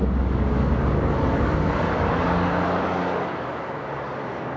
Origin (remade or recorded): remade